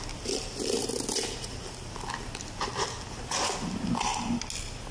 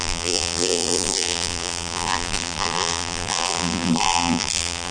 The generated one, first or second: second